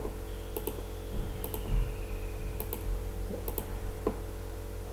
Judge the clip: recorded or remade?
recorded